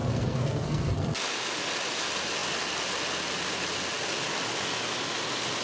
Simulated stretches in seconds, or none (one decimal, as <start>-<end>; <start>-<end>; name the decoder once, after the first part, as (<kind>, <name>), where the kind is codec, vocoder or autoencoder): 0.0-1.2 (codec, SNAC)